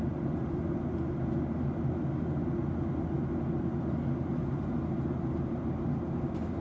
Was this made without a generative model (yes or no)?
yes